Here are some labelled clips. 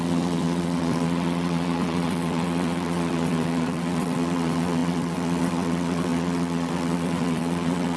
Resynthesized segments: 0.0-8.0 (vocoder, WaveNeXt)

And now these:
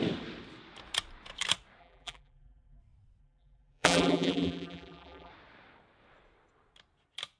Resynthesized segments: 1.8-2.8 (vocoder, BigVGAN v2); 3.2-5.3

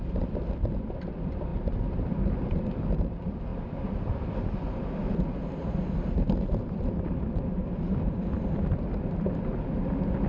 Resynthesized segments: 0.0-3.5 (vocoder, BigVGAN v2); 5.6-10.3

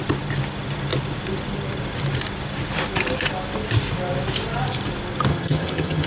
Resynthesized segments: 5.3-6.1 (vocoder, HiFi-GAN)

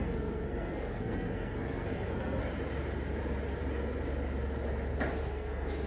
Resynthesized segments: 0.0-2.4 (codec, SNAC); 5.2-5.9

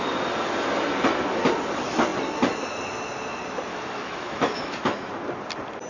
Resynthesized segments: 3.7-5.1 (autoencoder, DAC-VAE)

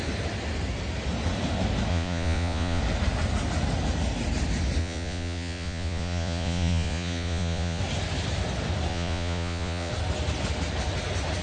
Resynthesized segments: 1.9-2.8 (vocoder, Vocos); 4.8-7.8; 8.9-9.9

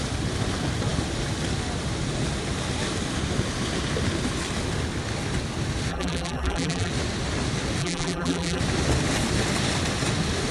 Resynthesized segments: 5.9-6.9 (vocoder, BigVGAN v2); 7.8-8.6